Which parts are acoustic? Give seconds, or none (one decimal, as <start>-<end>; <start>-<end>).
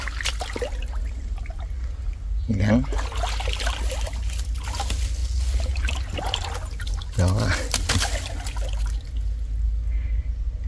0.0-10.7